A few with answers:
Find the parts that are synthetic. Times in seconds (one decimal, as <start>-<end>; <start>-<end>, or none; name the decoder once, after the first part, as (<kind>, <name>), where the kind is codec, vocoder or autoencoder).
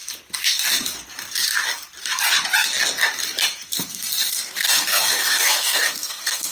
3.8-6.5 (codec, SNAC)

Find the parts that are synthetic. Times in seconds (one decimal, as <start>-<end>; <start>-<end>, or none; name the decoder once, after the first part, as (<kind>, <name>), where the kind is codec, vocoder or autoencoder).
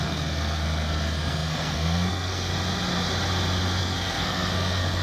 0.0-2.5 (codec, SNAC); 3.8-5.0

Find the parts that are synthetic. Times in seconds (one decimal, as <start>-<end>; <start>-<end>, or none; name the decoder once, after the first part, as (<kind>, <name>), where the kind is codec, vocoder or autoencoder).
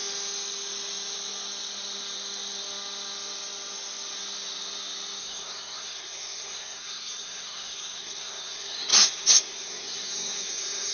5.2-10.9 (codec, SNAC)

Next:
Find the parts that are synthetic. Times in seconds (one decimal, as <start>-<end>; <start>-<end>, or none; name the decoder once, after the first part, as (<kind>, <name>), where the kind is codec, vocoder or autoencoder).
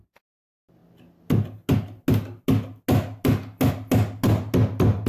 none